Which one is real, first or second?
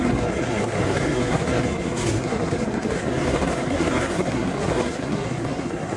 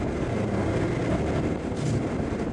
second